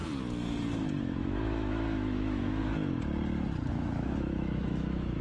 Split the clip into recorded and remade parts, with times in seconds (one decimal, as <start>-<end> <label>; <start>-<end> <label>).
0.0-1.0 recorded; 1.0-2.7 remade; 2.7-3.7 recorded; 3.7-5.2 remade